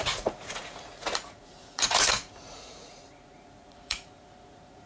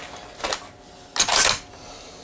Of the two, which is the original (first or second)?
second